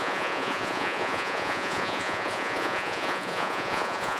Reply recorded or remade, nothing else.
remade